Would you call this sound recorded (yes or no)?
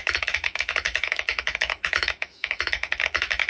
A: no